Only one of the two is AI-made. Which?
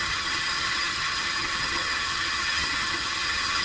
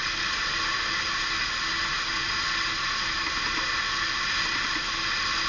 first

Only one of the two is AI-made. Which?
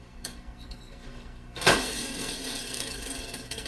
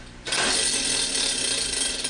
first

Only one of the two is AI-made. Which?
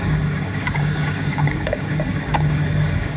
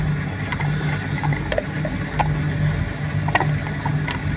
first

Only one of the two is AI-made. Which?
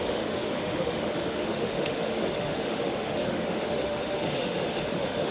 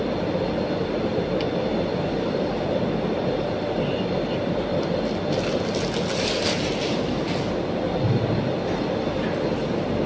first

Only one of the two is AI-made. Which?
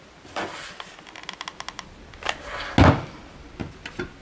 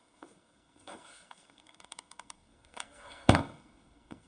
second